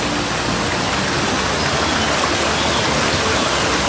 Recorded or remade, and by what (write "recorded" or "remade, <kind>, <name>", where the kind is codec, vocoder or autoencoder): recorded